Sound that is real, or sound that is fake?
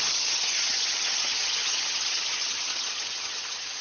fake